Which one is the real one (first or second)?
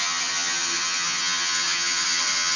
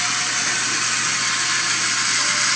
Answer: second